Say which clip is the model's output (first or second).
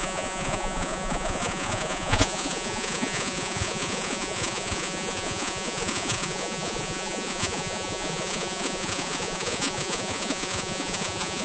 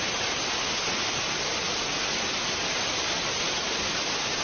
first